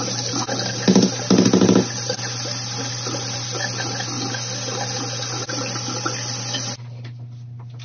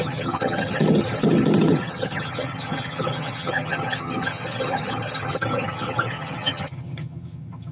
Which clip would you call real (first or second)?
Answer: first